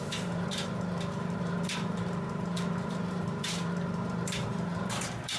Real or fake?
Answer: fake